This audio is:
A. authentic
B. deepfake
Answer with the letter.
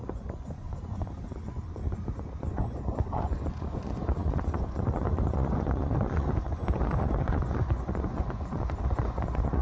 B